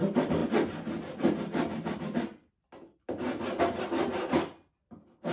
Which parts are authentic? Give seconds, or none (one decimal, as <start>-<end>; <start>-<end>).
0.0-5.3

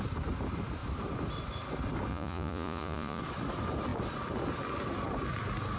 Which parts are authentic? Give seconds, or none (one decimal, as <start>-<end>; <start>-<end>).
0.0-2.1; 3.2-5.8

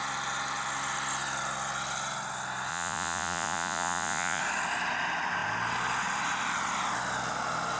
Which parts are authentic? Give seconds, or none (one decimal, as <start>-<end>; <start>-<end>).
0.0-2.7; 4.4-7.8

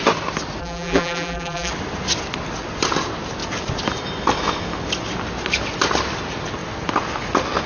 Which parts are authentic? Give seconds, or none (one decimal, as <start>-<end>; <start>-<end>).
0.0-0.6; 1.7-7.7

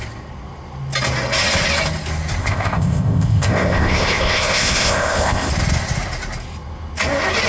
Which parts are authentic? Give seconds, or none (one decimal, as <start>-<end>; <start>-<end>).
0.0-2.4; 5.5-7.5

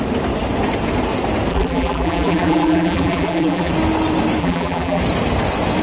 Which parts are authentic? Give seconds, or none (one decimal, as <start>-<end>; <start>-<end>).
0.0-1.5; 3.7-4.4; 5.0-5.8

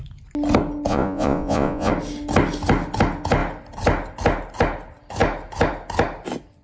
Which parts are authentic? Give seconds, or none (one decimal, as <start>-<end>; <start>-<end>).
0.0-0.9; 1.9-6.6